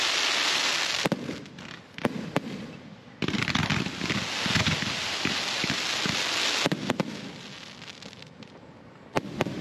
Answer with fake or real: real